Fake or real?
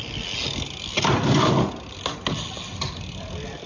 real